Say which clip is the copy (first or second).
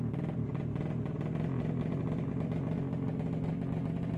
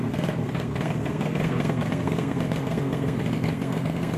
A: second